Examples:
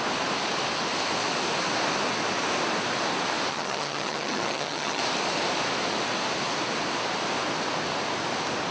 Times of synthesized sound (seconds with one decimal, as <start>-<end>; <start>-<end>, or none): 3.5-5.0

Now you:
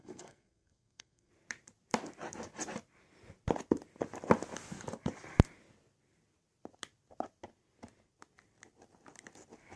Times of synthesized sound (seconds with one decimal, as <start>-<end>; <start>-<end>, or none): 0.0-1.3

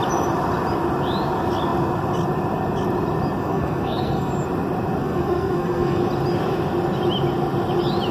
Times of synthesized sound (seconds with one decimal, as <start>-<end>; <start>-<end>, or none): 3.4-4.3; 5.0-6.0